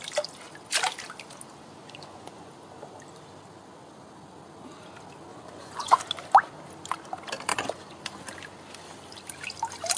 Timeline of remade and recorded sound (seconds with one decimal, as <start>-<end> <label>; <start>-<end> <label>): 0.0-1.8 recorded; 1.8-2.5 remade; 2.5-5.3 recorded; 5.3-6.0 remade; 6.0-7.5 recorded; 7.5-8.0 remade; 8.0-10.0 recorded